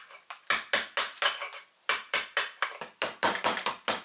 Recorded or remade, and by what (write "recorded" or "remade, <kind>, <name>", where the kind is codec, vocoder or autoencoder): recorded